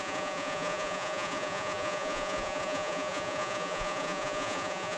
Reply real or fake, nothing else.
fake